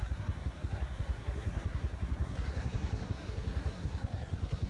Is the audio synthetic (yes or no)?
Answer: yes